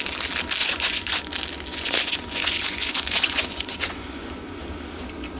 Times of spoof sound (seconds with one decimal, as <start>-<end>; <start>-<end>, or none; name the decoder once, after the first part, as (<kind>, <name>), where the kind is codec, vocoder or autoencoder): 0.6-1.2 (vocoder, Vocos); 1.7-4.6